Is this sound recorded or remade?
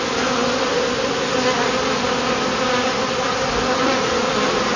recorded